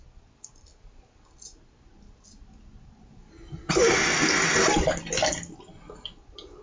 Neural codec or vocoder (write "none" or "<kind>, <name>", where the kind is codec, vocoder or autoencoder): none